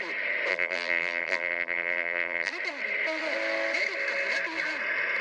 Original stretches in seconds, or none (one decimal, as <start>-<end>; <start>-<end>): 0.0-0.5; 2.5-5.2